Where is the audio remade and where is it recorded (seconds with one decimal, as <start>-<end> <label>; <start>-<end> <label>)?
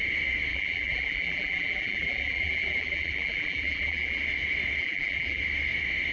0.0-0.5 recorded; 0.5-4.2 remade; 4.2-4.8 recorded; 4.8-5.4 remade; 5.4-6.1 recorded